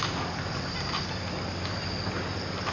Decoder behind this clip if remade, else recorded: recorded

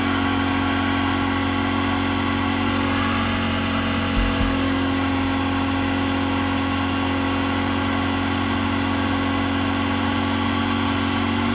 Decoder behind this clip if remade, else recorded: recorded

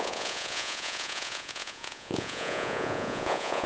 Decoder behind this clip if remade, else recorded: remade, vocoder, Vocos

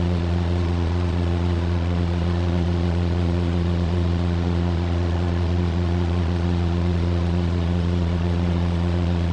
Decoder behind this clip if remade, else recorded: remade, vocoder, Vocos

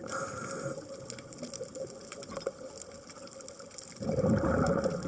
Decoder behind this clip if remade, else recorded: recorded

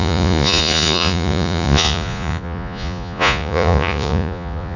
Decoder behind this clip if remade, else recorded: remade, vocoder, Vocos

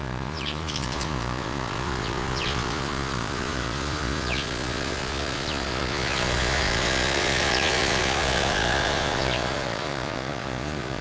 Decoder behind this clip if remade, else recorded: remade, vocoder, Vocos